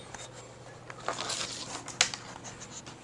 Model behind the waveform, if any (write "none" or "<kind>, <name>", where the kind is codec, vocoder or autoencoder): none